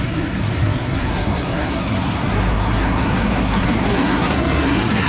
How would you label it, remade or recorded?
remade